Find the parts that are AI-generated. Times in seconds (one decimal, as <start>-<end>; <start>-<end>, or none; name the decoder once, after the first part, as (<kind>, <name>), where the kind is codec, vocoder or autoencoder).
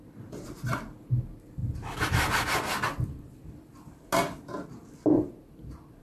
none